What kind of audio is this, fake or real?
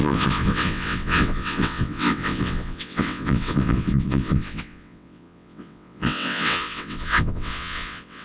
fake